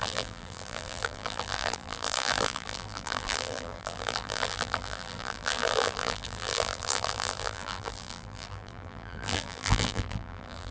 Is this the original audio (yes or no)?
no